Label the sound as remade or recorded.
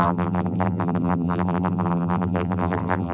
remade